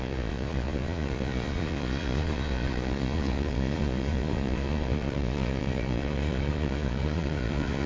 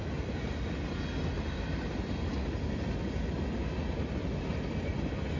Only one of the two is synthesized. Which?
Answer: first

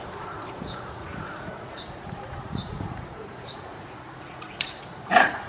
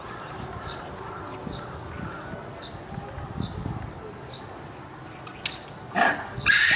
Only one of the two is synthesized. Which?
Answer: first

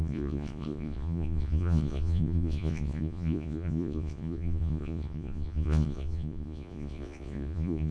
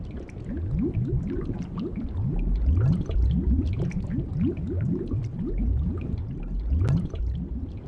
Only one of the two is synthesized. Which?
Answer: first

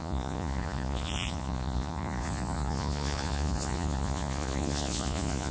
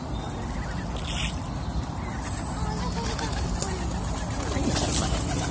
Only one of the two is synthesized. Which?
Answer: first